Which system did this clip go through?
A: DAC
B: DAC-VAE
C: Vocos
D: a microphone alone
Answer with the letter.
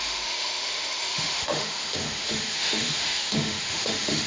B